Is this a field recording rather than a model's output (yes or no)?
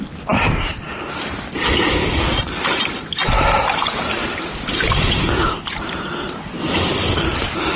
yes